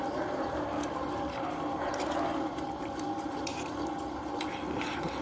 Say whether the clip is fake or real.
fake